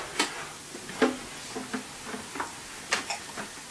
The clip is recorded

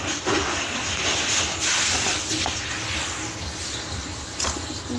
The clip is recorded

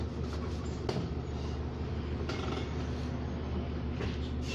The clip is recorded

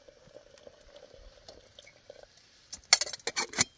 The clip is recorded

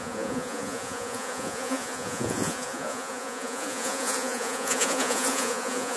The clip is remade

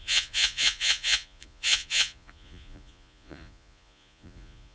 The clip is remade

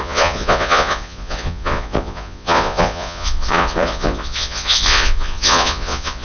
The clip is remade